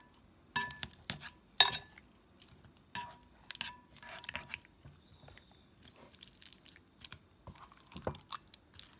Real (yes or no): yes